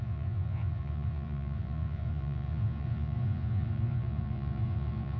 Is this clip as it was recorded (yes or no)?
no